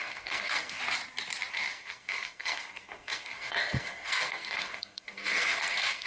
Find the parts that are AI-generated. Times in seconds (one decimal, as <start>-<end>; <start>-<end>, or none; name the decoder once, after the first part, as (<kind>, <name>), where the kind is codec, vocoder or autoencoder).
0.0-0.8 (codec, SNAC); 1.5-6.1

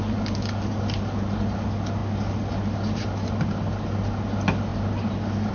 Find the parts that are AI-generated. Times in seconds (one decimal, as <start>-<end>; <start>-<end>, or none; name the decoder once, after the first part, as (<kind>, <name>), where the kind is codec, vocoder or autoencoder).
none

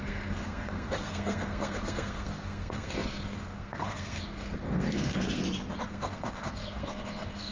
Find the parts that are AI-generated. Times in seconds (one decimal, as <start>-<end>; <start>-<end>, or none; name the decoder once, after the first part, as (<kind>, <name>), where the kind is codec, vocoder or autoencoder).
0.0-5.4 (codec, SNAC); 5.9-7.5

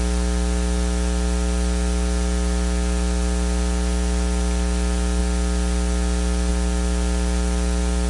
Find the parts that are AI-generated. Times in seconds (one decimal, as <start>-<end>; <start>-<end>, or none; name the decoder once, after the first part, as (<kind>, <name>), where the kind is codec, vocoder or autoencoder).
none